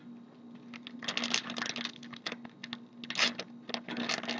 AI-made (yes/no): no